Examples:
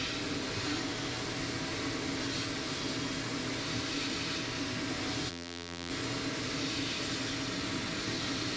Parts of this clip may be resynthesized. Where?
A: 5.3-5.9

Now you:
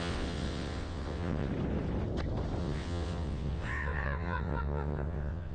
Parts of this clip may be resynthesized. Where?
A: 0.0-1.5; 2.6-5.5

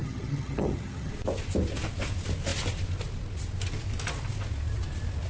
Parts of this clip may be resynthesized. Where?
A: 0.0-1.1